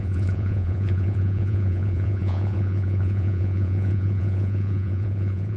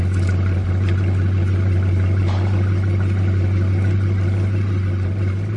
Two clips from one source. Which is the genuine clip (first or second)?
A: second